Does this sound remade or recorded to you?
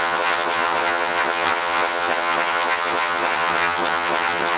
remade